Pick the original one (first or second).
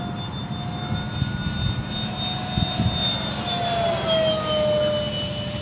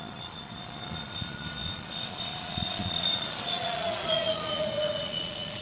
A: first